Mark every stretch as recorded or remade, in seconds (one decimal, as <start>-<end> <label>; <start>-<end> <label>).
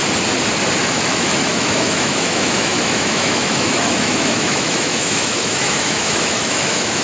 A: 0.0-0.8 recorded; 0.8-7.0 remade